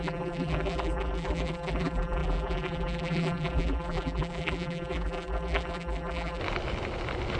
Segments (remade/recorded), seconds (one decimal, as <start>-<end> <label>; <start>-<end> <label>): 0.0-6.4 remade; 6.4-7.4 recorded